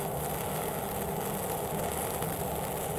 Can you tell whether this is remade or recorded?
recorded